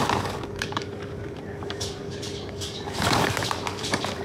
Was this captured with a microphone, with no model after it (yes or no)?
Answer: no